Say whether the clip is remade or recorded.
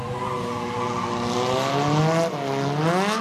recorded